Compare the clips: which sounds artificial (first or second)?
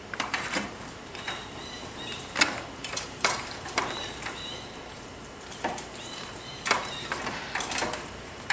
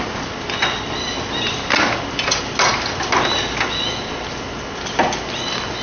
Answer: first